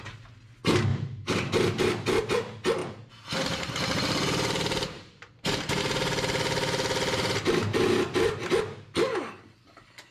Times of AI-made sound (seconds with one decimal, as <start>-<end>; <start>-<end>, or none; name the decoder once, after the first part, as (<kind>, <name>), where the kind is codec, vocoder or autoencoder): 0.9-1.9 (vocoder, BigVGAN v2); 2.8-5.8